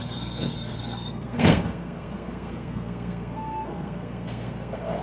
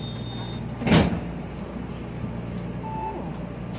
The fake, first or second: first